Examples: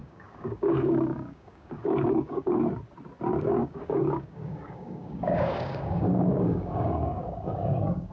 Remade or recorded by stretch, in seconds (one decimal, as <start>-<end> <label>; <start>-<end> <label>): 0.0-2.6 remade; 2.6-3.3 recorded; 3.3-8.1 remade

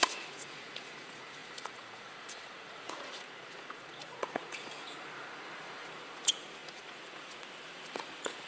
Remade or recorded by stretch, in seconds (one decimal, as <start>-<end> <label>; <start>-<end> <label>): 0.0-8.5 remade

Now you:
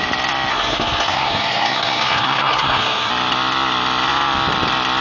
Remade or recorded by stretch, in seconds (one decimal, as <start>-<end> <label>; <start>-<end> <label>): 0.0-0.5 recorded; 0.5-3.1 remade; 3.1-5.0 recorded

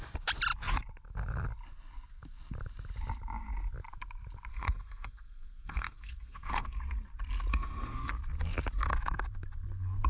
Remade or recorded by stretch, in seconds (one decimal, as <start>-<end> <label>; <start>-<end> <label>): 0.0-4.5 recorded; 4.5-6.8 remade; 6.8-7.5 recorded; 7.5-8.1 remade; 8.1-10.1 recorded

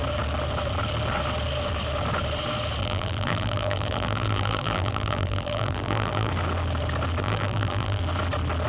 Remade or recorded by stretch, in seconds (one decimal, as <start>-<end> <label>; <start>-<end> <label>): 0.0-2.8 recorded; 2.8-6.3 remade; 6.3-7.2 recorded; 7.2-8.0 remade; 8.0-8.7 recorded

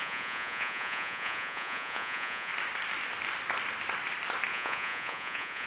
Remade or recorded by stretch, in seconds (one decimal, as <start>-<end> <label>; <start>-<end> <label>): 0.0-2.5 remade; 2.5-4.5 recorded; 4.5-5.7 remade

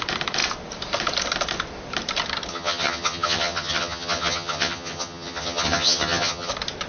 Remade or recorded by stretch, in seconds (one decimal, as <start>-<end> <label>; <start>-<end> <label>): 0.0-2.5 recorded; 2.5-6.5 remade; 6.5-6.9 recorded